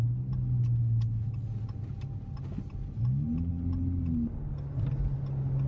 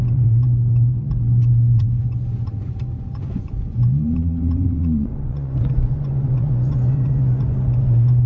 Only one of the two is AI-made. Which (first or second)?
second